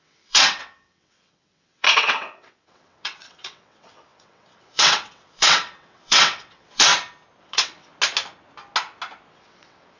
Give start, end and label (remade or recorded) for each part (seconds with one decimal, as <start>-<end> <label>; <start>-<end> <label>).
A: 0.0-6.9 remade; 6.9-7.4 recorded; 7.4-7.9 remade; 7.9-9.3 recorded; 9.3-10.0 remade